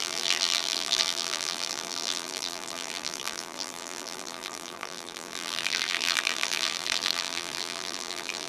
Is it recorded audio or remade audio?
remade